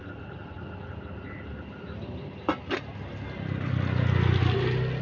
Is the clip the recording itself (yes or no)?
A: yes